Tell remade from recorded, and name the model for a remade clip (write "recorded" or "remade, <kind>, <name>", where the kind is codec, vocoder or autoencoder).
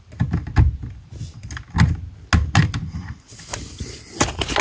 recorded